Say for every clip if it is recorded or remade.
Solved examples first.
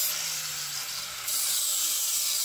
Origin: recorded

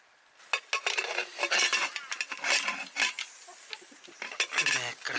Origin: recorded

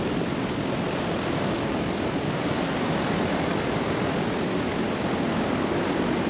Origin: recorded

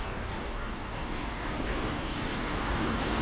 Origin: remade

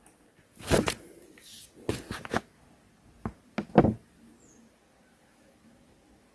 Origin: recorded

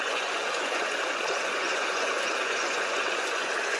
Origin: remade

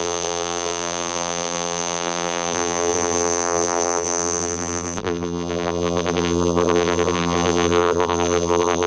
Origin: remade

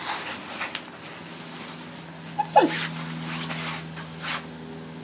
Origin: recorded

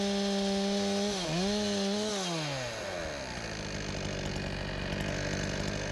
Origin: recorded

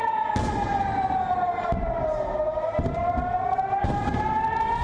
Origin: recorded